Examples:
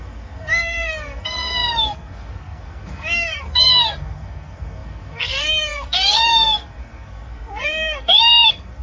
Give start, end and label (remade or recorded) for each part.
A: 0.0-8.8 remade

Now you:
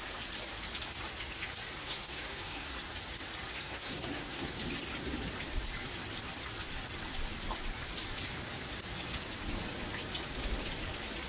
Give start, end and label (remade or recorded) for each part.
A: 0.0-1.8 recorded; 1.8-2.8 remade; 2.8-3.5 recorded; 3.5-4.6 remade; 4.6-11.3 recorded

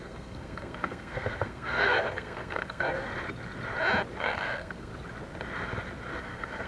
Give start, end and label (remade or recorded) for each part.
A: 0.0-3.1 remade; 3.1-4.2 recorded; 4.2-4.9 remade; 4.9-6.2 recorded; 6.2-6.7 remade